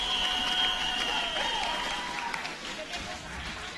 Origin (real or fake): real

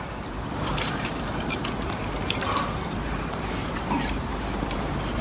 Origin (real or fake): fake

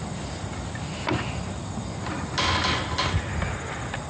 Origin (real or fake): real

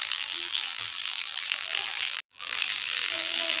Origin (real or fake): fake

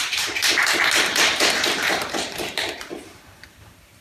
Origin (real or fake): fake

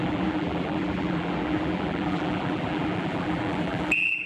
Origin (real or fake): fake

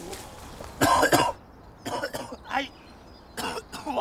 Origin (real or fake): real